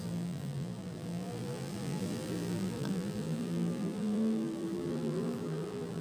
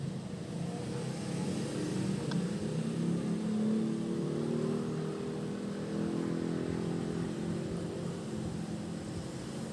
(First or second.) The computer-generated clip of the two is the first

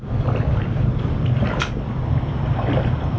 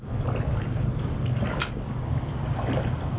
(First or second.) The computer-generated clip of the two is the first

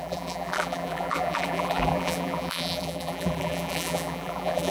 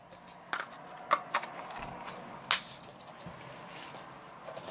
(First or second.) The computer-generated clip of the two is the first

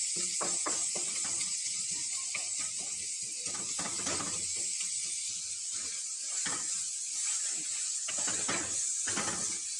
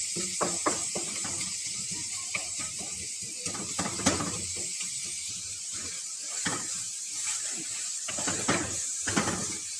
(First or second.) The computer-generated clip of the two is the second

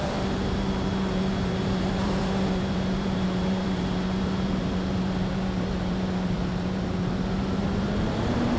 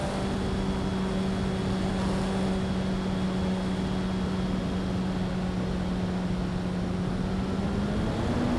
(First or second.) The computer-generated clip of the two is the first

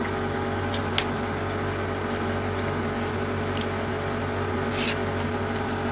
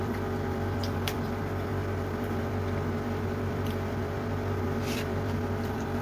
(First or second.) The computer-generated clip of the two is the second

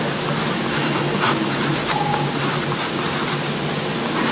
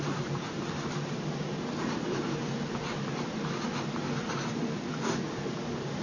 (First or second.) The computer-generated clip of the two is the second